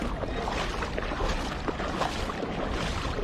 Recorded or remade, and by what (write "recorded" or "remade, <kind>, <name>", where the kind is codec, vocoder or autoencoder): recorded